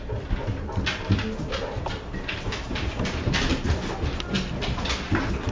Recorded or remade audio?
recorded